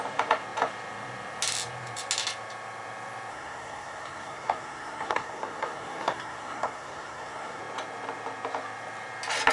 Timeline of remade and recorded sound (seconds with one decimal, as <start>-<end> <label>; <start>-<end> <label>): 0.0-3.3 recorded; 3.3-7.6 remade; 7.6-9.5 recorded